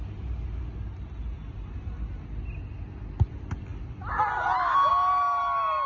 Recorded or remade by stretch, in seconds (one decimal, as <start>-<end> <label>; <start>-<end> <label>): 0.0-5.9 recorded